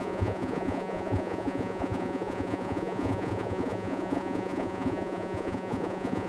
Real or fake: fake